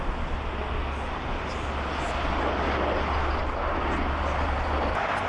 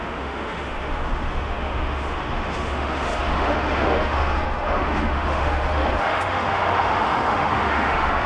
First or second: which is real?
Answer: first